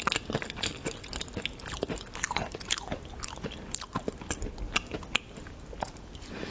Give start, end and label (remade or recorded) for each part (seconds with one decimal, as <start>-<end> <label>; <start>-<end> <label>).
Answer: 0.0-6.5 recorded